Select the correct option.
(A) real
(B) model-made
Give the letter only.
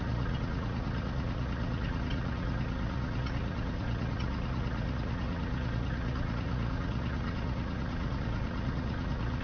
B